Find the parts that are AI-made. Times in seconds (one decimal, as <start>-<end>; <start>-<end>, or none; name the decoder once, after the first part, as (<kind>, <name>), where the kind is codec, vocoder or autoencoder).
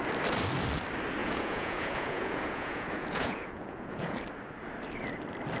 1.2-4.2 (vocoder, Vocos)